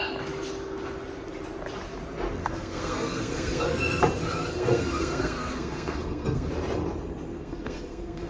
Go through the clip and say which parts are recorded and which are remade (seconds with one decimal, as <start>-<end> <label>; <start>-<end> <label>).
0.0-2.4 recorded; 2.4-4.0 remade; 4.0-4.5 recorded; 4.5-6.5 remade; 6.5-7.3 recorded; 7.3-8.3 remade